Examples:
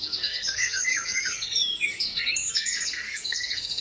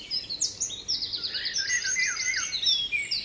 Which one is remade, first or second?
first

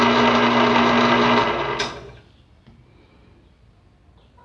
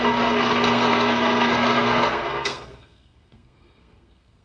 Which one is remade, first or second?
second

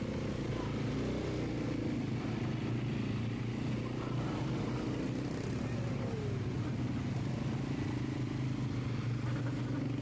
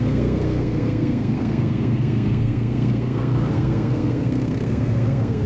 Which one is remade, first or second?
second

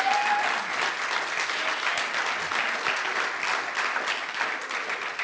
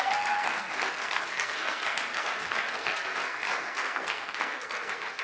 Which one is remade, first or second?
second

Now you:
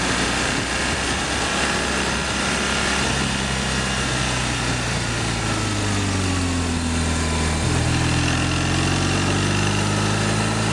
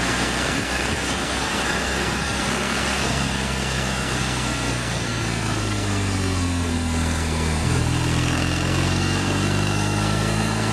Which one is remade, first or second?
second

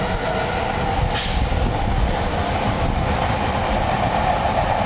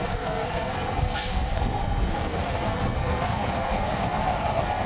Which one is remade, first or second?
second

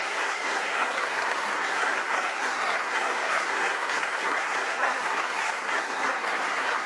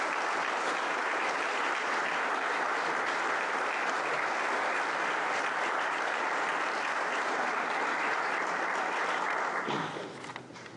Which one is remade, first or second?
first